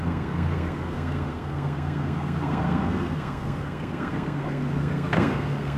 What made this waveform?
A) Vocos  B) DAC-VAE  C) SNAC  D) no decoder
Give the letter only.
C